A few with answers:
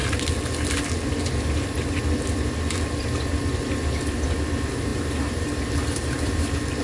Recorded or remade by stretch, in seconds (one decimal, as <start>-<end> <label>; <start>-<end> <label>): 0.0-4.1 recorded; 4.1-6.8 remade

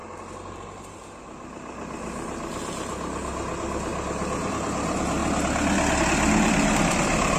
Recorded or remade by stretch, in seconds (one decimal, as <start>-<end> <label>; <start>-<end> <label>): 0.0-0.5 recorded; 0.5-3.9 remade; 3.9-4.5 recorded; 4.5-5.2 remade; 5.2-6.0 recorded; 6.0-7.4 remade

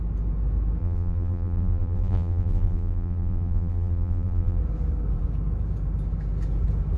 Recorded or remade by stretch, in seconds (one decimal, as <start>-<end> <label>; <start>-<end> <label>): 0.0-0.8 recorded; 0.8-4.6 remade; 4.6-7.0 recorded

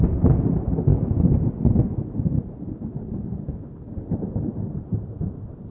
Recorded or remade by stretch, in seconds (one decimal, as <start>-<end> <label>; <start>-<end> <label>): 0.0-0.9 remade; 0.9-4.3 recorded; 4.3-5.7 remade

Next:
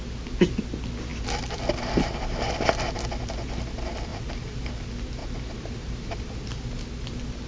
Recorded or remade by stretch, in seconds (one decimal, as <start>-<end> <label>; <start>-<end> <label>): 0.0-4.1 recorded; 4.1-4.7 remade; 4.7-5.2 recorded; 5.2-6.3 remade; 6.3-7.5 recorded

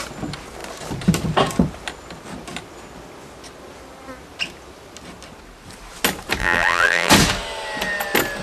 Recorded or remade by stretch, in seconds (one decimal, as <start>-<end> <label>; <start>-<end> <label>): 0.0-6.4 recorded; 6.4-7.1 remade; 7.1-8.4 recorded